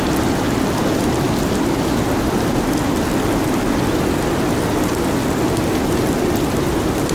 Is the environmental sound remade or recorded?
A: recorded